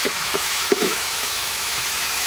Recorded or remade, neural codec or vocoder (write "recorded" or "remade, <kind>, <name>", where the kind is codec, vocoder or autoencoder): remade, autoencoder, DAC-VAE